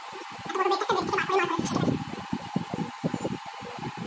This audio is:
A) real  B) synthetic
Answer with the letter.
A